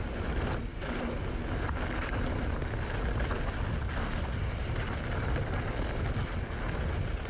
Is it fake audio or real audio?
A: real